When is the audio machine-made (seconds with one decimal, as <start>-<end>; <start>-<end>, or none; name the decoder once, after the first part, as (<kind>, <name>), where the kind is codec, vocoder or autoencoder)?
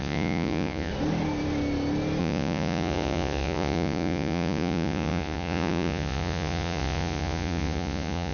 0.0-0.9 (vocoder, Vocos); 2.2-8.3